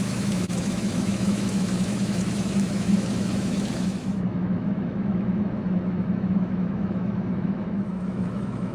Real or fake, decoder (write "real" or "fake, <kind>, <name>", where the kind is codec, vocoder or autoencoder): fake, autoencoder, DAC-VAE